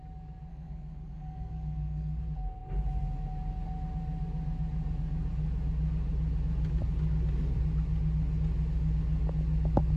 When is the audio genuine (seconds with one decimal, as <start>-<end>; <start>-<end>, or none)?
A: 0.0-0.5; 2.2-10.0